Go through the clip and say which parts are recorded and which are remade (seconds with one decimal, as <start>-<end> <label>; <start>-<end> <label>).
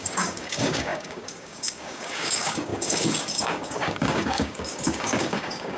0.0-5.8 remade